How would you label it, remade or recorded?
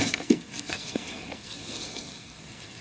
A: remade